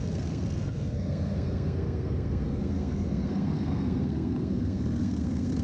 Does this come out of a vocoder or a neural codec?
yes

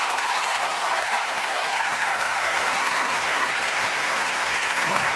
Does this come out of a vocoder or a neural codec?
yes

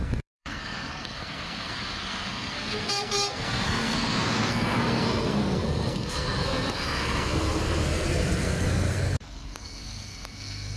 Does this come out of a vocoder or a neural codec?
yes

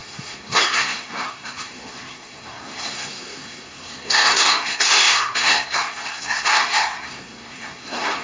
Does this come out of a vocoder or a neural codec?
yes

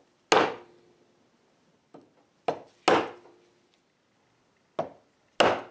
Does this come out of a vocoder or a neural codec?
no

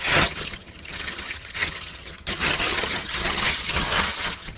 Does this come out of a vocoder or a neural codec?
yes